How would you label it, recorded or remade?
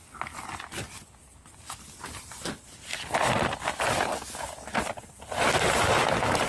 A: recorded